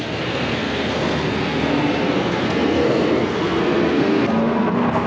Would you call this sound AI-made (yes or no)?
yes